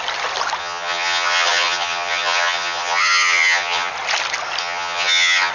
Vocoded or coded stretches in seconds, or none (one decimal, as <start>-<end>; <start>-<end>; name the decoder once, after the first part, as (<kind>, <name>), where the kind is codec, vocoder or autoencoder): 0.6-3.9 (vocoder, HiFi-GAN); 4.6-5.5